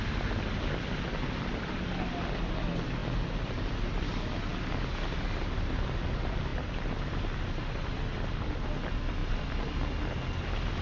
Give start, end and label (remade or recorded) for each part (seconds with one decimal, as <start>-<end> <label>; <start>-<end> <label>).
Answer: 0.0-10.8 recorded